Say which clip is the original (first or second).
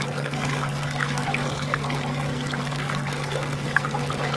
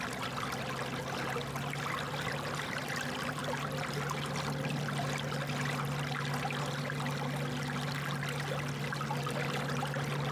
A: second